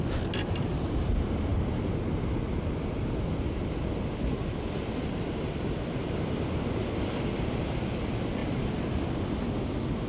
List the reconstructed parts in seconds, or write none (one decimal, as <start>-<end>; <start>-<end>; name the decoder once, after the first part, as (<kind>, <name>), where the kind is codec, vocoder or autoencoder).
none